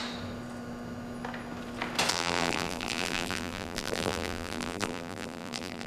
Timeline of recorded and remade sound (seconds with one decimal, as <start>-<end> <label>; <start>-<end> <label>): 0.0-2.1 recorded; 2.1-5.9 remade